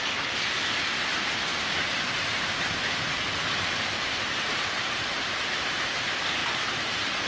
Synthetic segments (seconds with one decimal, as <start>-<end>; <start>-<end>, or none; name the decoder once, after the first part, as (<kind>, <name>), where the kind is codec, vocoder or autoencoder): 1.5-5.5 (vocoder, BigVGAN v2); 6.4-7.3